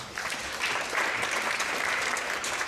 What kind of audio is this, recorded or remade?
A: remade